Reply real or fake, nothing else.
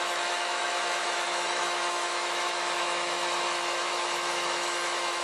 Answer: fake